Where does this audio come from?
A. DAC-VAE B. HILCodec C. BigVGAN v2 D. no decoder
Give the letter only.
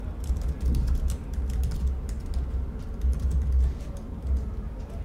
D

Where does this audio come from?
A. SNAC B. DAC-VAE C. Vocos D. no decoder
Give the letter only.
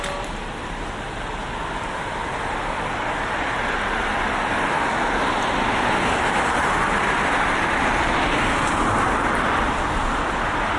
D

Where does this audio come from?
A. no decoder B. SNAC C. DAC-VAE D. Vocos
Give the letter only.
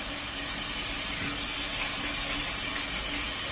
A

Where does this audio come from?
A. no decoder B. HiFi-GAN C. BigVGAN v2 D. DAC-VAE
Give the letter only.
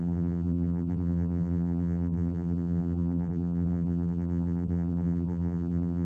C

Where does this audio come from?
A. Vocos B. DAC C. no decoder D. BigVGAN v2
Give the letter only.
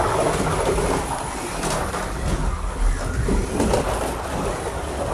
C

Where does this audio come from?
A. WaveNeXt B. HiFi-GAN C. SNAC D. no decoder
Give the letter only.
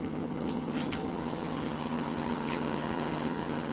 B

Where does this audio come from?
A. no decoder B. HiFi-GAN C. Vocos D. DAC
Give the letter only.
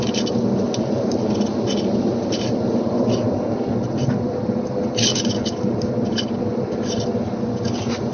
A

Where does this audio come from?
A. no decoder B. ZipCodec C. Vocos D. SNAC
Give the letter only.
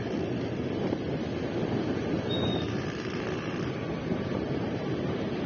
A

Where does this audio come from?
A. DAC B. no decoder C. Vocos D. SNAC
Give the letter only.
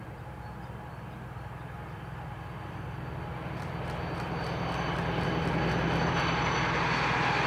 B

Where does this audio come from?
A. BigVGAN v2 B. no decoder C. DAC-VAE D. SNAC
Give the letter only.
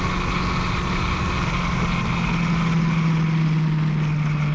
B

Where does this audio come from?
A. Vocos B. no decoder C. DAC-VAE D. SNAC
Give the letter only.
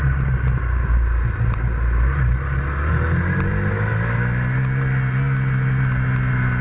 B